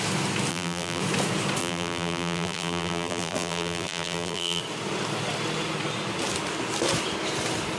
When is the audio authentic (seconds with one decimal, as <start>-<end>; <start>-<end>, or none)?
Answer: 0.0-0.5; 1.0-1.6; 4.6-7.8